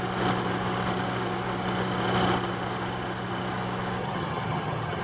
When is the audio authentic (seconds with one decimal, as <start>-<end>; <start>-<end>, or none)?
0.0-4.0